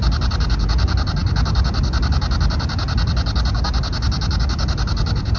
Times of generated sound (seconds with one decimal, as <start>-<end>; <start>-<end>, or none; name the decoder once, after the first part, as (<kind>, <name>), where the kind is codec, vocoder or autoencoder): none